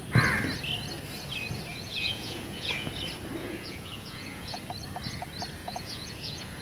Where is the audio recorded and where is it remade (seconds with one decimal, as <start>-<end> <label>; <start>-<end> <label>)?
0.0-1.7 recorded; 1.7-2.9 remade; 2.9-3.4 recorded; 3.4-4.6 remade; 4.6-5.6 recorded; 5.6-6.6 remade